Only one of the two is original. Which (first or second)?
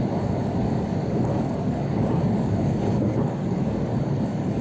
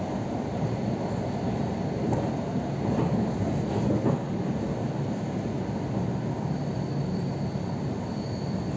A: second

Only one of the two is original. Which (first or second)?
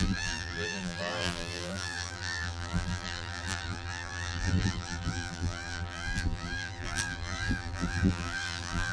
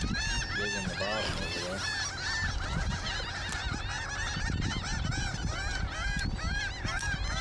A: second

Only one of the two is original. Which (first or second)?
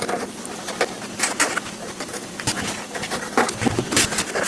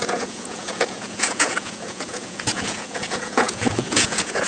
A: first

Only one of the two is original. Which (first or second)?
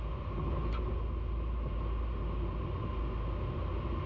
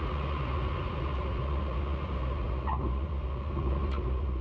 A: first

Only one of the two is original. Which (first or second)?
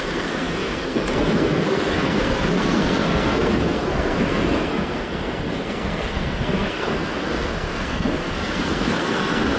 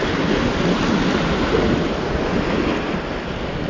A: second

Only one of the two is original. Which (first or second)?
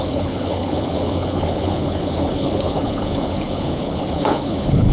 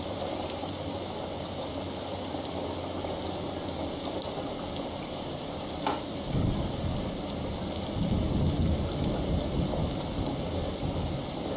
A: second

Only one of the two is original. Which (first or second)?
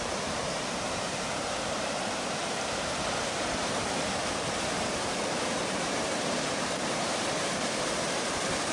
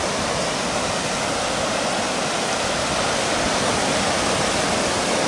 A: second